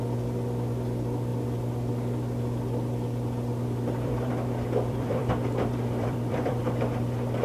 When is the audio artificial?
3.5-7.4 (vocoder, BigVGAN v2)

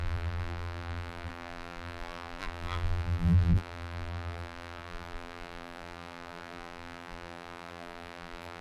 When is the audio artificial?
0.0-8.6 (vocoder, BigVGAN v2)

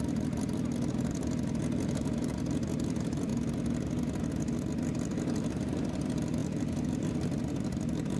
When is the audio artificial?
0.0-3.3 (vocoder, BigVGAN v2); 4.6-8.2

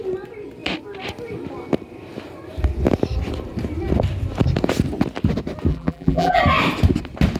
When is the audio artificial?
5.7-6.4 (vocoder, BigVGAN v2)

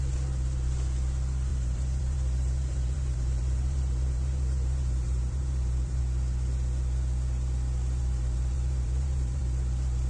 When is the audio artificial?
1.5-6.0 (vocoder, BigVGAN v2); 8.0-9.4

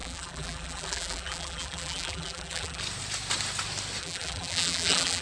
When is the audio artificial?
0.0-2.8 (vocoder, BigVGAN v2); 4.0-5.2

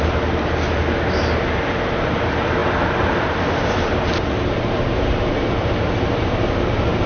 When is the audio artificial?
0.0-7.1 (vocoder, BigVGAN v2)

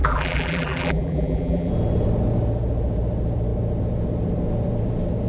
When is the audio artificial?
0.0-1.7 (vocoder, BigVGAN v2)